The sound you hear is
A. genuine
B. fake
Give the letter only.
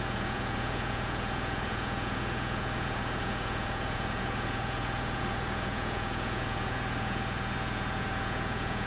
B